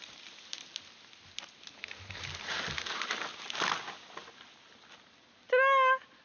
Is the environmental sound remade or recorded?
recorded